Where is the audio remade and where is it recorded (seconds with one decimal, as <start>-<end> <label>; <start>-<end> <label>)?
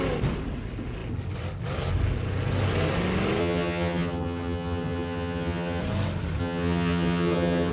0.0-3.4 recorded; 3.4-5.8 remade; 5.8-6.4 recorded; 6.4-7.7 remade